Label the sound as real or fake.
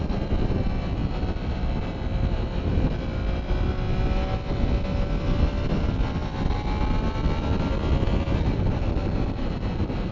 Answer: real